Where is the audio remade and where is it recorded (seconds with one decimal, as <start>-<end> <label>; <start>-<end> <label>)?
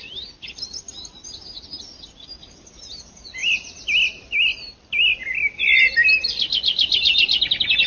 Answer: 0.0-7.9 recorded